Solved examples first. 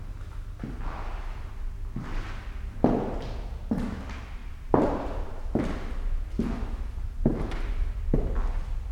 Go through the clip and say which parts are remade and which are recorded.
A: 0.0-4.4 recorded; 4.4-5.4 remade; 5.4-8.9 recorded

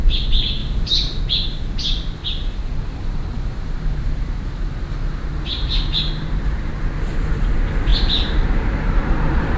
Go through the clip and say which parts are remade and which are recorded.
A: 0.0-0.6 recorded; 0.6-1.2 remade; 1.2-2.2 recorded; 2.2-6.7 remade; 6.7-7.9 recorded; 7.9-9.6 remade

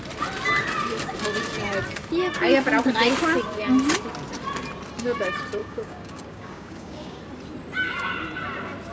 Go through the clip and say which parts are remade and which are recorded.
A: 0.0-5.6 recorded; 5.6-7.2 remade; 7.2-8.9 recorded

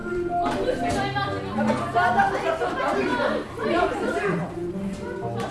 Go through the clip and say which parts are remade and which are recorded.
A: 0.0-0.9 remade; 0.9-3.1 recorded; 3.1-4.6 remade; 4.6-5.5 recorded

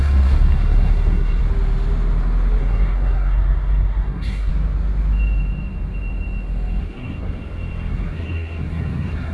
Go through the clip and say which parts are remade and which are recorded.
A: 0.0-1.4 remade; 1.4-2.6 recorded; 2.6-4.5 remade; 4.5-6.8 recorded; 6.8-7.4 remade; 7.4-7.9 recorded; 7.9-9.3 remade

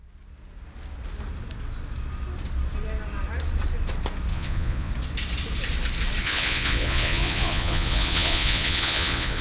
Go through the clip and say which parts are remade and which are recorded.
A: 0.0-4.3 recorded; 4.3-4.9 remade; 4.9-6.2 recorded; 6.2-9.4 remade

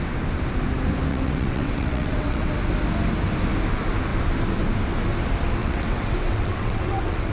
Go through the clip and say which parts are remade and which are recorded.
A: 0.0-1.1 recorded; 1.1-2.5 remade; 2.5-5.6 recorded; 5.6-7.3 remade